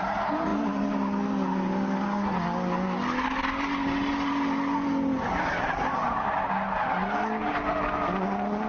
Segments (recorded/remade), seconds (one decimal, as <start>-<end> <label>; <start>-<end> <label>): 0.0-8.7 recorded